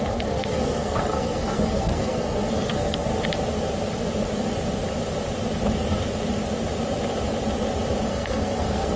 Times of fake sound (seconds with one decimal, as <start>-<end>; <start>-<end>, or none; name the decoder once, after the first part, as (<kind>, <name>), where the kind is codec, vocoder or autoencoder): 0.0-3.1 (codec, SNAC); 8.1-9.0